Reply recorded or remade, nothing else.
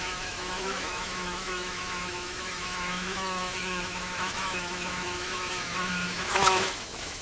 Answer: remade